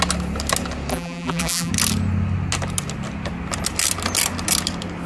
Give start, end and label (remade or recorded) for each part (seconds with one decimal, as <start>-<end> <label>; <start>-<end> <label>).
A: 0.0-0.9 recorded; 0.9-1.7 remade; 1.7-5.1 recorded